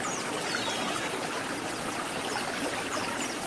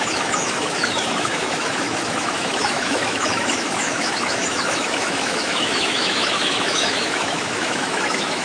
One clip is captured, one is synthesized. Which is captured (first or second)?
first